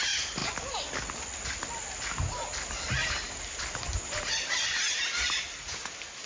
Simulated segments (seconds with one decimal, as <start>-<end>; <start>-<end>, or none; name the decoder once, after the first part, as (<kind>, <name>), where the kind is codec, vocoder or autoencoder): none